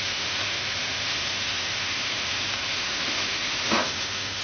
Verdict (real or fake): fake